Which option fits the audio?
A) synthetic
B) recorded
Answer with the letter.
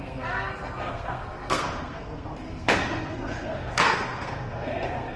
A